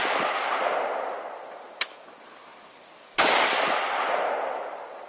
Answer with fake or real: real